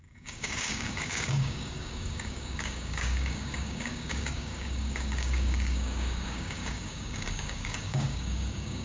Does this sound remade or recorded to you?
remade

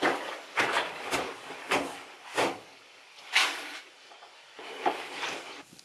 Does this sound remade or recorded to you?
remade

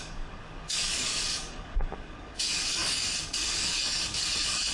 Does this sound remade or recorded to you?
remade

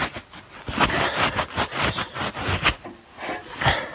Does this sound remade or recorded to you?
recorded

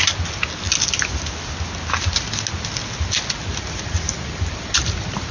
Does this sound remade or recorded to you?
recorded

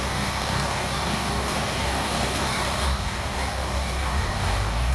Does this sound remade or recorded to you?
remade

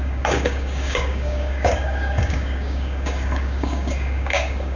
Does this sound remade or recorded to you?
remade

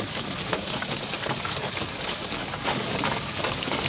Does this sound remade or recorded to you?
remade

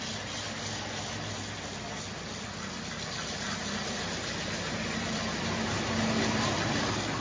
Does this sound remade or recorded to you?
recorded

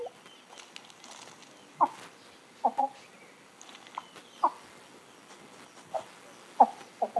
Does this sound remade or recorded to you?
recorded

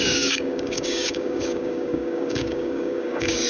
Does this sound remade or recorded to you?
remade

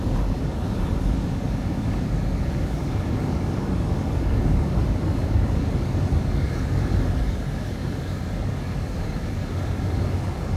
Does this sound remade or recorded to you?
remade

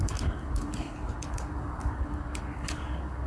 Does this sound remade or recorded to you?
remade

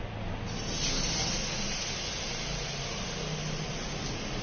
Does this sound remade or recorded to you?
recorded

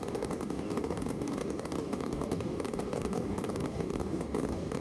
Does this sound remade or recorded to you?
remade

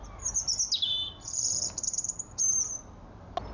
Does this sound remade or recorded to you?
recorded